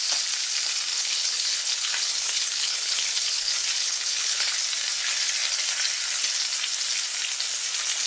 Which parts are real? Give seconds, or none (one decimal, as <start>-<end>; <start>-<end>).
0.0-0.9; 4.5-8.1